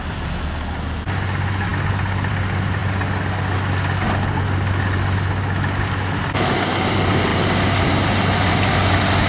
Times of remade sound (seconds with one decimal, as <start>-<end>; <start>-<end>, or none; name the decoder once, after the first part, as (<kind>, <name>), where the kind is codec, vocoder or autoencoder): none